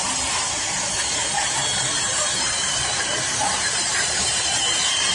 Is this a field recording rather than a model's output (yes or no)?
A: no